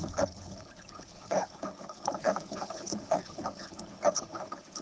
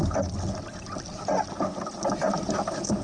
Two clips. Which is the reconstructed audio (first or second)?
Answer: first